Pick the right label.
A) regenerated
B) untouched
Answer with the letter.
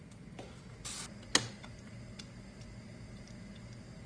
B